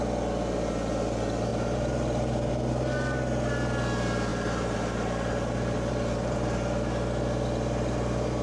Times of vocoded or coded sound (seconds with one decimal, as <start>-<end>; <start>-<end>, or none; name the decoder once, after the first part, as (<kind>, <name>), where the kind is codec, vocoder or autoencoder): 1.5-2.5 (vocoder, BigVGAN v2); 4.3-5.9